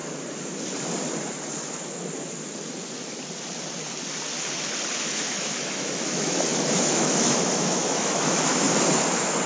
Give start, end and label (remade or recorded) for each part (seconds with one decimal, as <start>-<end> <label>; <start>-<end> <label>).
0.0-5.0 recorded; 5.0-8.7 remade; 8.7-9.5 recorded

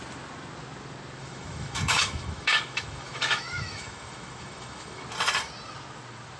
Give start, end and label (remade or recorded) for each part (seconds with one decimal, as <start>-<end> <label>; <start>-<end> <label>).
0.0-1.2 recorded; 1.2-5.0 remade; 5.0-6.4 recorded

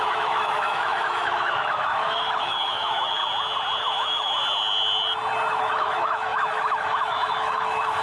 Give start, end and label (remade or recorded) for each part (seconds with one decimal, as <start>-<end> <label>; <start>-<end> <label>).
0.0-3.2 remade; 3.2-3.8 recorded; 3.8-4.4 remade; 4.4-5.5 recorded; 5.5-8.0 remade